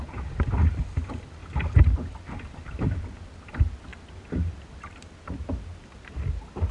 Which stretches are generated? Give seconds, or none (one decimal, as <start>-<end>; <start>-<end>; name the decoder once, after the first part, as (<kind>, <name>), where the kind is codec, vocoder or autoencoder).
none